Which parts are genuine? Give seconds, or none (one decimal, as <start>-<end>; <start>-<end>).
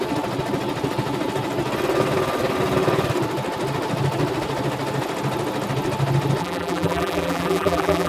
0.0-6.4